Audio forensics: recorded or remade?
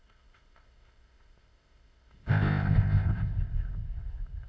remade